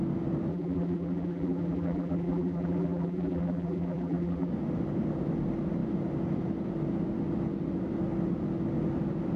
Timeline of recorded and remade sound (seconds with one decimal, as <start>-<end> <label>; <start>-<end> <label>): 0.0-0.5 recorded; 0.5-4.5 remade; 4.5-9.4 recorded